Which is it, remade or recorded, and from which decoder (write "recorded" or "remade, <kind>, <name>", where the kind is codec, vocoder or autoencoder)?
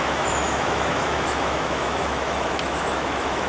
remade, autoencoder, DAC-VAE